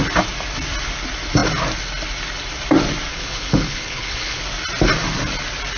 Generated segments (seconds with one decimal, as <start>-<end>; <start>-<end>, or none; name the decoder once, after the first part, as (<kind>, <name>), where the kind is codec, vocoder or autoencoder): 3.1-4.4 (codec, HILCodec)